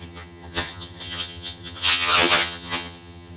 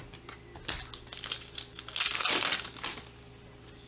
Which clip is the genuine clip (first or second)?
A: second